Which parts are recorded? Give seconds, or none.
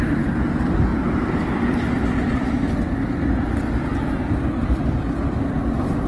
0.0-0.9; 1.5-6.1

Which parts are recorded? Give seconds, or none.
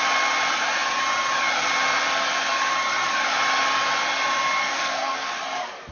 0.0-4.6; 5.3-5.9